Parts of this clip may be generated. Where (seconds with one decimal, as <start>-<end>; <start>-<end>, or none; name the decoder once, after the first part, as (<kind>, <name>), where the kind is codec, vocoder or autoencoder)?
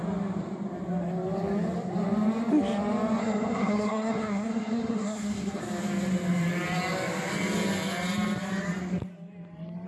3.2-5.6 (codec, SNAC)